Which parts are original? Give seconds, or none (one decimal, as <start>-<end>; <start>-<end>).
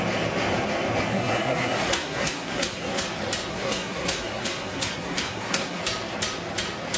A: 0.0-1.1; 3.0-3.5; 5.8-7.0